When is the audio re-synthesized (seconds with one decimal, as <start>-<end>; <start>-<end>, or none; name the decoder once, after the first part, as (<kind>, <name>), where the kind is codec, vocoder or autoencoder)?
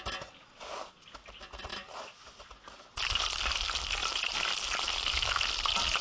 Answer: 1.7-2.5 (vocoder, BigVGAN v2); 4.0-4.9